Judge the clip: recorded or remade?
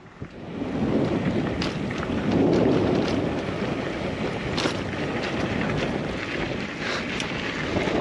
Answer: recorded